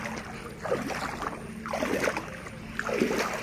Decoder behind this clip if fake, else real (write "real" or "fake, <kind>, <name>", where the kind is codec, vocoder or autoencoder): real